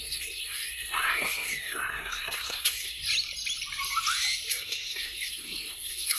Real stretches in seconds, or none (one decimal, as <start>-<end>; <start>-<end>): 3.0-4.5